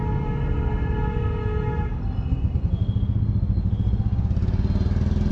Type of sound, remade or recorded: recorded